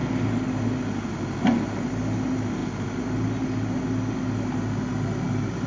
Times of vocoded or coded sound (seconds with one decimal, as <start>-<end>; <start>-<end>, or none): none